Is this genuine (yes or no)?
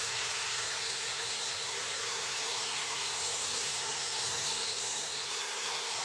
no